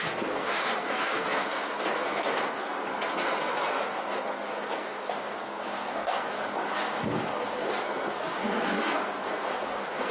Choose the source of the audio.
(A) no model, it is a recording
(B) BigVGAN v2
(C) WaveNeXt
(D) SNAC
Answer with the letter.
D